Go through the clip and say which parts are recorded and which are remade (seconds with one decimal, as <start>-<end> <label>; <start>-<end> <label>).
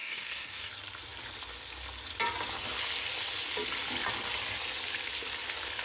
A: 0.0-0.7 remade; 0.7-5.8 recorded